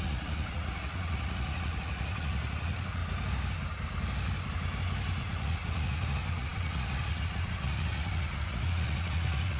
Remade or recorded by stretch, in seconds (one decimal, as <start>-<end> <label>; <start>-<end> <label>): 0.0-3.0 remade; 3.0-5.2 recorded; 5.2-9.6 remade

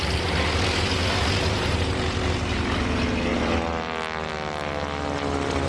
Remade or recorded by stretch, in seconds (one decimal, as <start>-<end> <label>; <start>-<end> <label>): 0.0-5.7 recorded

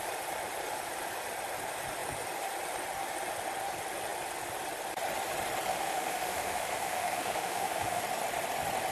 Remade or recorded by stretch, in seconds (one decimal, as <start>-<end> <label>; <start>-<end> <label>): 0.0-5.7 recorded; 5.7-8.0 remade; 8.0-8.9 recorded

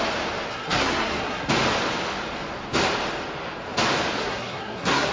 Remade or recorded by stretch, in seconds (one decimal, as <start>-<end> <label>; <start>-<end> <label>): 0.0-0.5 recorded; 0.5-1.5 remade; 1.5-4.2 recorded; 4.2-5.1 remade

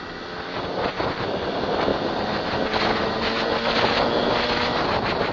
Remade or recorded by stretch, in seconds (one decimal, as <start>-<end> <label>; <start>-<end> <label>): 0.0-5.3 recorded

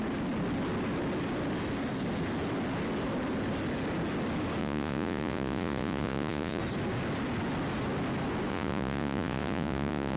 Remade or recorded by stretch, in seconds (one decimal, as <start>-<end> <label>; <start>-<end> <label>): 0.0-4.6 recorded; 4.6-6.6 remade; 6.6-8.5 recorded; 8.5-10.2 remade